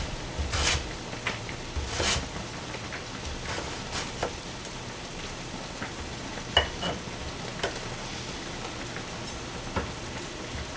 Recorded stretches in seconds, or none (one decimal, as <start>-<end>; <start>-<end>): 0.0-10.8